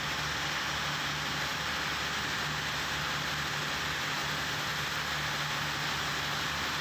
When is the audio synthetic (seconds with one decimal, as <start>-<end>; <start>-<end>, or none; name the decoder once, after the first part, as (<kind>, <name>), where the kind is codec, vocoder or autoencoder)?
none